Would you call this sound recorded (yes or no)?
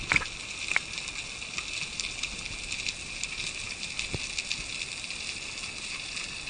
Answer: yes